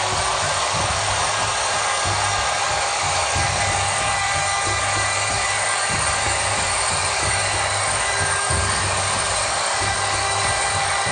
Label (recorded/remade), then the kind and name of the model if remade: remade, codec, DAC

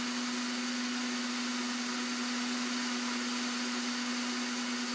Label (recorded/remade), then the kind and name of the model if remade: recorded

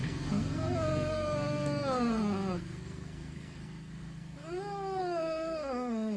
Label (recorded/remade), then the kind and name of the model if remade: remade, codec, SNAC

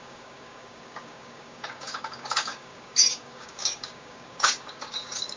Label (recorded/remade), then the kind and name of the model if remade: remade, codec, DAC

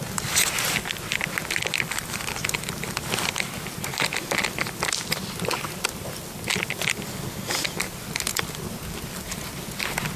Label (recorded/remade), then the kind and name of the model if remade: recorded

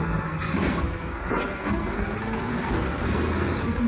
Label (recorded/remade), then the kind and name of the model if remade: remade, codec, SNAC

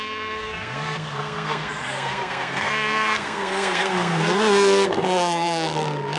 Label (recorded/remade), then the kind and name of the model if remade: remade, codec, SNAC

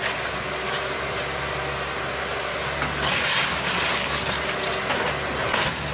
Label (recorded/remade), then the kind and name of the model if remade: recorded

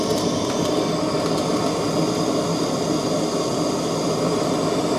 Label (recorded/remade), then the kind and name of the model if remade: recorded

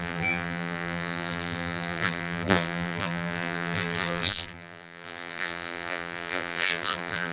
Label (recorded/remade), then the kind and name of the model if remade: remade, vocoder, BigVGAN v2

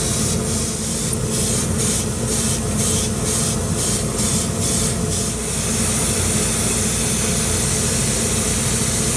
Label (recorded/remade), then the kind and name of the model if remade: recorded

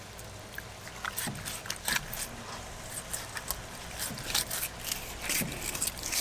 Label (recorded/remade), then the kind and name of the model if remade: recorded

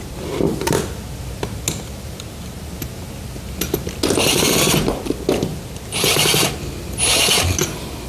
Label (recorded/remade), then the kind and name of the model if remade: recorded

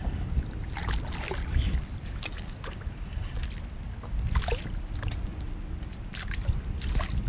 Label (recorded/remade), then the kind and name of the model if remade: recorded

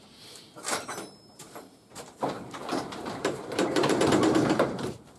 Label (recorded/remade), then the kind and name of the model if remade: remade, vocoder, BigVGAN v2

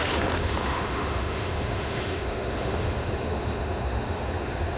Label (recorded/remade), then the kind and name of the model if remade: remade, autoencoder, DAC-VAE